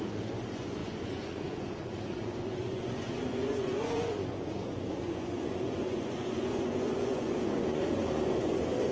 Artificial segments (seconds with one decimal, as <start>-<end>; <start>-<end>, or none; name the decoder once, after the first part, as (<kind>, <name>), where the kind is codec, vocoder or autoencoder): 0.0-8.9 (vocoder, Vocos)